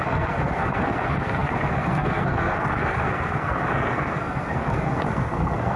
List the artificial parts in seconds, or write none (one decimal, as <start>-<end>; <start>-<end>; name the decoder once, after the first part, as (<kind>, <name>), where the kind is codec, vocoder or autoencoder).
0.0-5.8 (codec, SNAC)